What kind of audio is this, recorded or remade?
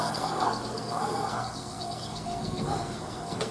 remade